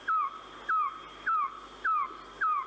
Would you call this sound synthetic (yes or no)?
no